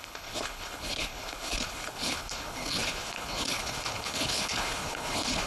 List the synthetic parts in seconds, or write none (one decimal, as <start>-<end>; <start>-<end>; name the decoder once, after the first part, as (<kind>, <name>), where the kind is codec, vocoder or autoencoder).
0.0-5.5 (codec, HILCodec)